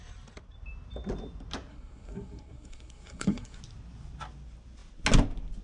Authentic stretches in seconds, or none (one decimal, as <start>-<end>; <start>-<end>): 0.0-1.7; 3.6-5.6